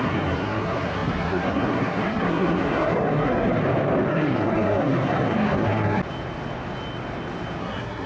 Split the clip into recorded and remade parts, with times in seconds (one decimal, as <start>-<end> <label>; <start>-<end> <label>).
0.0-3.6 remade; 3.6-4.1 recorded; 4.1-6.0 remade; 6.0-7.6 recorded; 7.6-8.1 remade